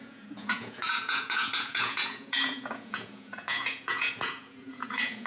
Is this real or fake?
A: fake